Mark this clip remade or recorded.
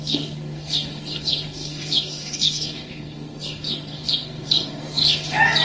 remade